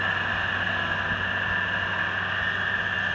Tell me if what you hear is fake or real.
real